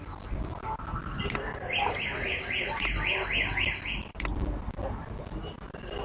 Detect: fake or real real